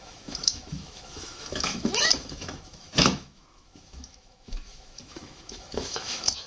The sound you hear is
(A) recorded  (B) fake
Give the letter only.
B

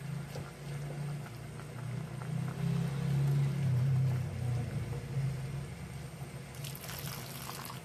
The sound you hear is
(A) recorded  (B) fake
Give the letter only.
A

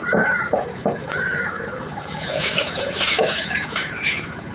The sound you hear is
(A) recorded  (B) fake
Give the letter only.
B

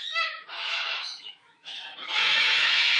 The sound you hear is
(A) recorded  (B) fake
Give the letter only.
B